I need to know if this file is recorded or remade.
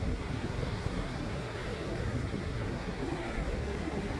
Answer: remade